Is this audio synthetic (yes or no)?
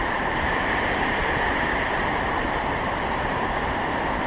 yes